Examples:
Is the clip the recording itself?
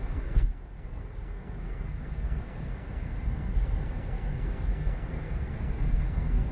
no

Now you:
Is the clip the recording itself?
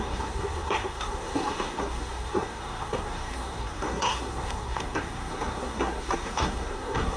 no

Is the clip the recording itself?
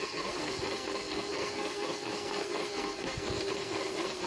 no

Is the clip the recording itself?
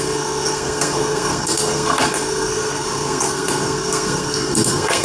no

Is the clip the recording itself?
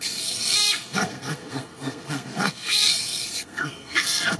no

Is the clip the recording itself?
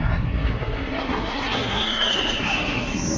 no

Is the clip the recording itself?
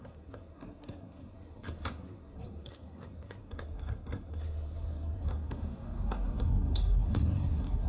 no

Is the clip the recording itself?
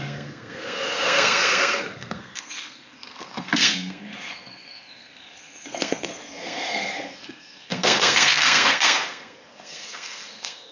no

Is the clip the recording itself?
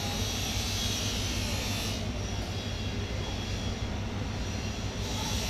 yes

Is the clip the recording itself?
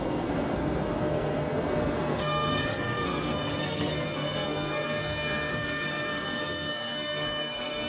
no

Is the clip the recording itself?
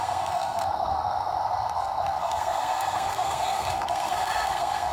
no